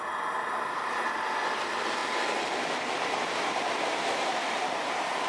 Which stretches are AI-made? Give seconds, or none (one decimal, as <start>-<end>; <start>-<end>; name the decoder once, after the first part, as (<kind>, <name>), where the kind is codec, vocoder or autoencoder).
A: none